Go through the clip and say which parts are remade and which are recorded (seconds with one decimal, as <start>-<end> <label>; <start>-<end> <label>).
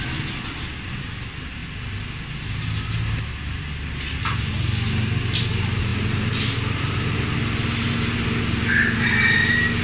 0.0-9.8 recorded